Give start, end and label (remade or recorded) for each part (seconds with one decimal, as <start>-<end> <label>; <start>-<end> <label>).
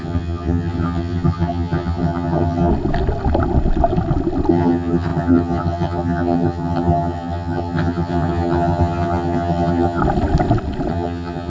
0.0-2.7 remade; 2.7-4.5 recorded; 4.5-10.0 remade; 10.0-10.9 recorded; 10.9-11.5 remade